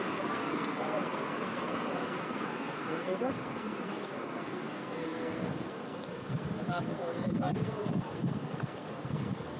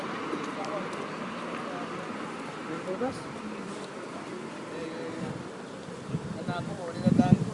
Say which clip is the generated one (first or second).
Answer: first